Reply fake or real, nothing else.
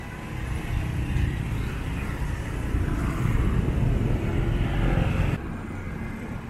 real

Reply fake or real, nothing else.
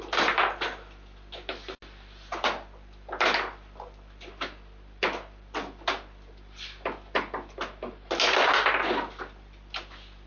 real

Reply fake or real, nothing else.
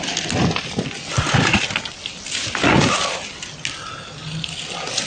real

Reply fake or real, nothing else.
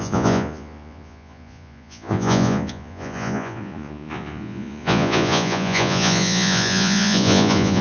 fake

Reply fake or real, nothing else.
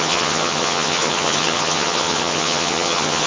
fake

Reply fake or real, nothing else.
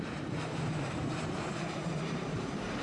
fake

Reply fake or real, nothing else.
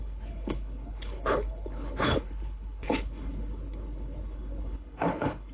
fake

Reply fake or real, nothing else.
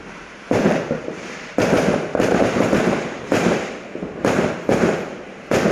fake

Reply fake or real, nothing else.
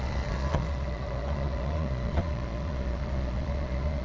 fake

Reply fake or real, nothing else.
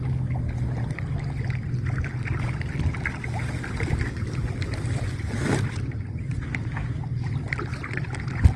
real